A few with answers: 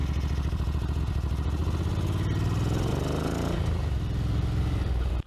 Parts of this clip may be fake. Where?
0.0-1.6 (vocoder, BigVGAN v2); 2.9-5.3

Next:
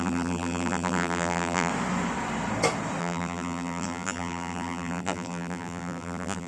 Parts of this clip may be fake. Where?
0.0-1.7 (vocoder, BigVGAN v2); 3.0-6.5